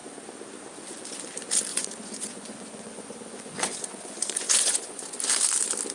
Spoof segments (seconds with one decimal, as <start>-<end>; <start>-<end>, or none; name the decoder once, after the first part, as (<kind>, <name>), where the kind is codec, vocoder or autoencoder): 1.7-5.2 (vocoder, Vocos)